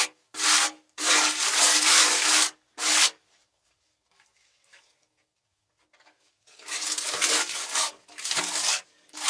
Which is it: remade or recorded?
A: remade